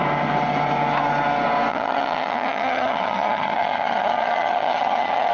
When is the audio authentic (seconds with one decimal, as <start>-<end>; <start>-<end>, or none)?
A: 0.0-1.7